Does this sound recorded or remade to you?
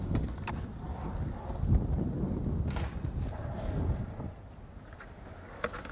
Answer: recorded